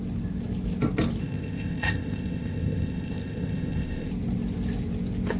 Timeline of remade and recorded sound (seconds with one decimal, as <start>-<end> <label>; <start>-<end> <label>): 0.0-1.2 recorded; 1.2-4.1 remade; 4.1-5.4 recorded